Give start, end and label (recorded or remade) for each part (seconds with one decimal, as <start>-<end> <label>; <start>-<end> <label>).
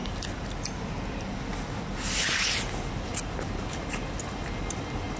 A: 0.0-5.2 recorded